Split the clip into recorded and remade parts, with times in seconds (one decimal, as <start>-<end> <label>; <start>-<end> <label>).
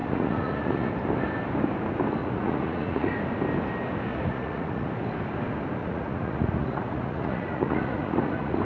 0.0-0.9 remade; 0.9-2.2 recorded; 2.2-3.1 remade; 3.1-4.1 recorded; 4.1-4.9 remade; 4.9-5.8 recorded; 5.8-8.6 remade